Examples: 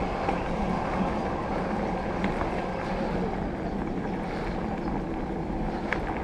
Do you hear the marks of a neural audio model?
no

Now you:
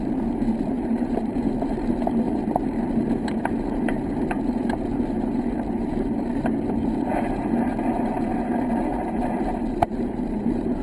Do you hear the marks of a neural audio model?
yes